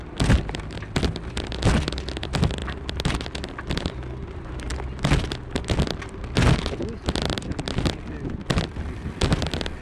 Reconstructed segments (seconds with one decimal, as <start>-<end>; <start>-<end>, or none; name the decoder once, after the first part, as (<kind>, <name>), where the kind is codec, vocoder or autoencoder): none